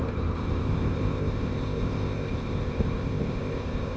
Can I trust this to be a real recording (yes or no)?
no